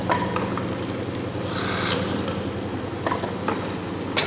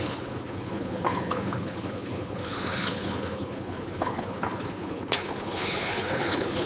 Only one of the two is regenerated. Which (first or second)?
second